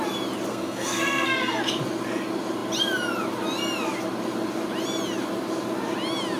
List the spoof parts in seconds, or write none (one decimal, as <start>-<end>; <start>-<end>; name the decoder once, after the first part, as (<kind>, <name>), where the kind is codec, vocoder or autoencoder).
0.5-1.6 (codec, SNAC)